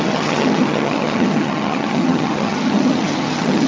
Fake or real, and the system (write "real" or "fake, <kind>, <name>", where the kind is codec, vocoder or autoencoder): fake, vocoder, HiFi-GAN